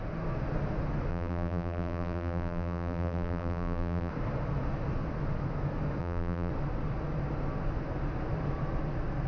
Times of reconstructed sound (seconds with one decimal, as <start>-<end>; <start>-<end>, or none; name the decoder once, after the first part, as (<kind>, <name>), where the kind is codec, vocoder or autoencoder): 1.1-4.1 (vocoder, BigVGAN v2); 6.0-6.5